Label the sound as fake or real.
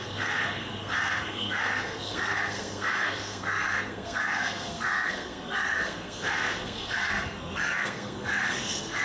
fake